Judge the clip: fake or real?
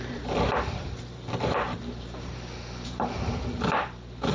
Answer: fake